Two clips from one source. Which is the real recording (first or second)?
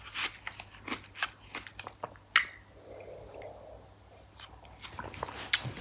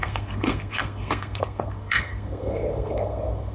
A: first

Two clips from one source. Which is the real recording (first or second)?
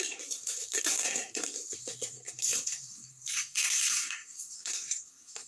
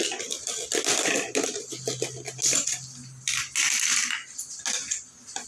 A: second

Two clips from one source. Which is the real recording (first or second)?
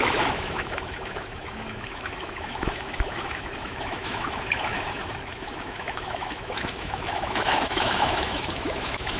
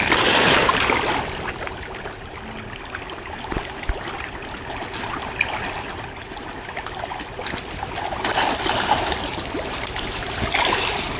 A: second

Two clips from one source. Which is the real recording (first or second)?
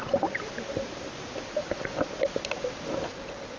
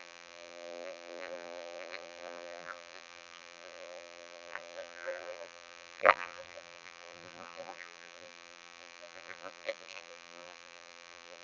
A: first